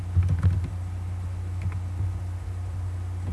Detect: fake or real real